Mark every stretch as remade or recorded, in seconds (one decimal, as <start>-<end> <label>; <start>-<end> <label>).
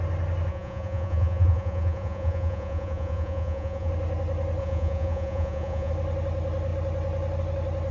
0.0-0.5 recorded; 0.5-3.9 remade; 3.9-4.6 recorded; 4.6-5.9 remade; 5.9-7.9 recorded